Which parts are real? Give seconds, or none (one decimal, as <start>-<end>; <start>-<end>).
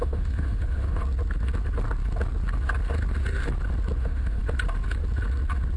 1.0-4.0; 4.4-5.8